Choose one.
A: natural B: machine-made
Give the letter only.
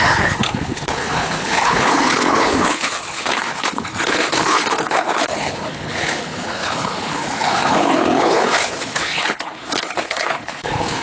B